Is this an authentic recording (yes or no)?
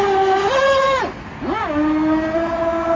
yes